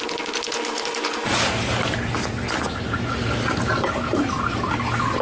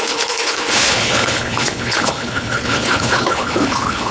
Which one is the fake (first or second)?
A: second